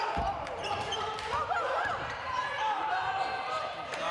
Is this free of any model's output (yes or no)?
no